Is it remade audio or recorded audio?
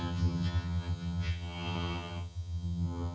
remade